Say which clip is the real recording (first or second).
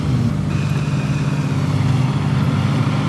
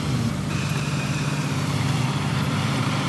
first